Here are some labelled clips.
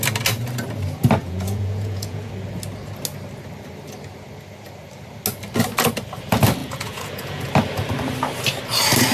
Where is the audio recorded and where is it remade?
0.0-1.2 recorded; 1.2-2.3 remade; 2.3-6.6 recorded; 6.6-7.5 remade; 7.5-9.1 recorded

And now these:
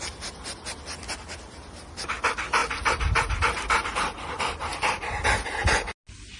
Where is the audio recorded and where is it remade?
0.0-6.4 recorded